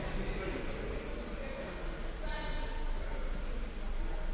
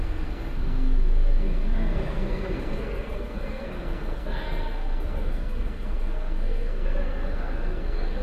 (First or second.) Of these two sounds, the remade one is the second